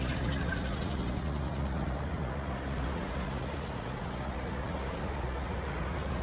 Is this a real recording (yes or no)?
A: no